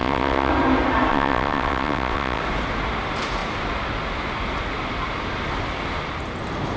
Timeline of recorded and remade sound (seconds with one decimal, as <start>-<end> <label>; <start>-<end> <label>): 0.0-0.5 remade; 0.5-1.1 recorded; 1.1-2.4 remade; 2.4-6.8 recorded